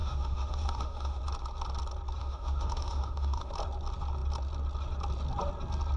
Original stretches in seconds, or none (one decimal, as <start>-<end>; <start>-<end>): 1.2-2.2; 3.5-6.0

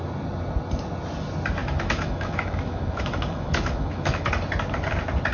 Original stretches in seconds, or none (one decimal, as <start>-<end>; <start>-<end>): 0.0-1.6; 4.3-5.3

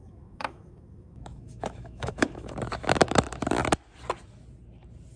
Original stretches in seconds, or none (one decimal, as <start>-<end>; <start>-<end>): 2.5-5.2